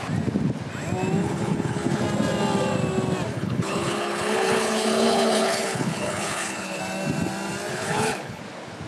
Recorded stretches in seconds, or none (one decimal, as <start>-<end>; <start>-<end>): 0.0-1.2; 2.0-3.3; 6.8-7.7; 8.4-8.9